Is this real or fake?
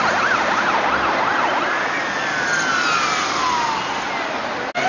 real